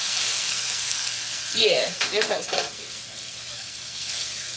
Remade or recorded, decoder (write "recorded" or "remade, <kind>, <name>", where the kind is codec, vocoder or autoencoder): remade, codec, SNAC